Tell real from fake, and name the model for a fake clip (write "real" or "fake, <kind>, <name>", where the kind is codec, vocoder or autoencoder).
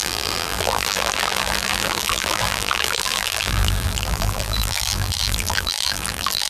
fake, vocoder, BigVGAN v2